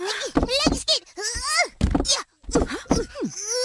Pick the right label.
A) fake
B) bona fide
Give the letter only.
B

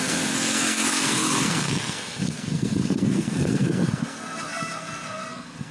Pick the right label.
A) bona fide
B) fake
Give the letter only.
B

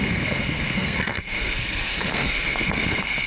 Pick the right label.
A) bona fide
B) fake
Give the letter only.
B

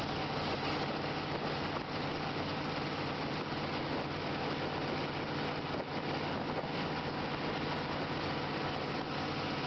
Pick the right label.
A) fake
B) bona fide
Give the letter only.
B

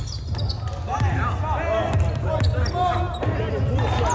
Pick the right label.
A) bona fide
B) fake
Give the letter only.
A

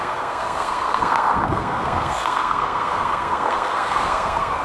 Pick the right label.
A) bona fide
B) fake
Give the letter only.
B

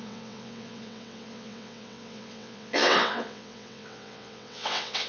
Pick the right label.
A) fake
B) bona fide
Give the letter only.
A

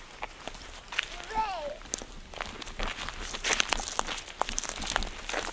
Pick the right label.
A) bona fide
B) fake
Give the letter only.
A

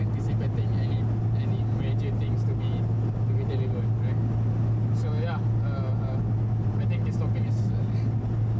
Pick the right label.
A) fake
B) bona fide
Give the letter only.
B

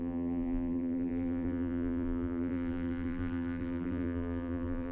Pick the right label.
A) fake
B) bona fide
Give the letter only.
A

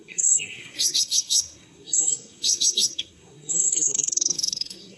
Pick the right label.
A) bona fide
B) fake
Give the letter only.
B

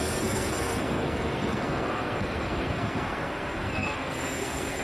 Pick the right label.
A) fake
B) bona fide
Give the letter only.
A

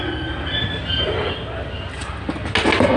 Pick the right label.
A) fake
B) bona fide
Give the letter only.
B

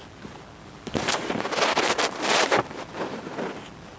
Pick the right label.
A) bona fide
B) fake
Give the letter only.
A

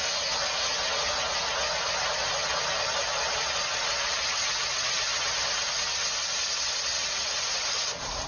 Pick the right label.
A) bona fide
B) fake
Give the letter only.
A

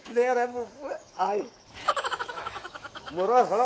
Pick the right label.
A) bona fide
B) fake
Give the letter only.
B